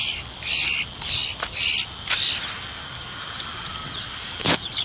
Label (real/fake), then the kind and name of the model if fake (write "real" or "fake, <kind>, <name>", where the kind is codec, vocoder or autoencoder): real